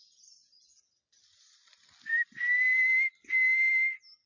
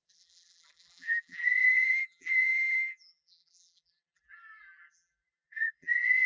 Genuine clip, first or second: first